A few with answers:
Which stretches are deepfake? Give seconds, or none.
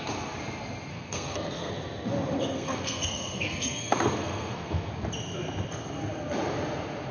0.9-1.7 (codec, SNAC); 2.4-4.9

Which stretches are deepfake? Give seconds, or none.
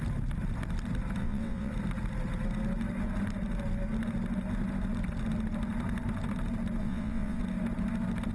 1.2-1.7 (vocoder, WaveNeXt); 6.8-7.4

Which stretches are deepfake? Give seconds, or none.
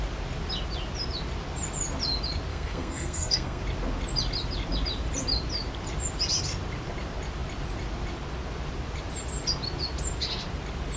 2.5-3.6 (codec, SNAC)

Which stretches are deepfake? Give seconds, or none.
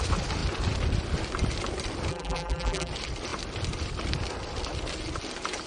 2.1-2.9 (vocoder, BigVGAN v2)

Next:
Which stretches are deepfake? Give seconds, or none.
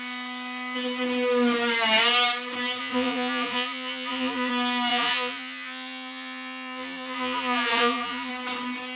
2.8-4.5 (vocoder, Vocos); 4.9-8.3